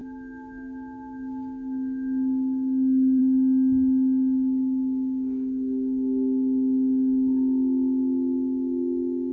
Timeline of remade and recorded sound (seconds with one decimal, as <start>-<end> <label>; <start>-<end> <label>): 0.0-9.3 recorded